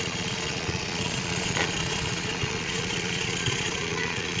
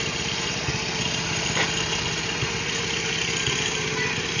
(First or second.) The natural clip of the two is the second